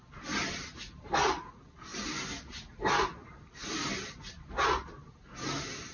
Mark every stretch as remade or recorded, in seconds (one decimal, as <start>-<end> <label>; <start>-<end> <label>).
0.0-5.9 recorded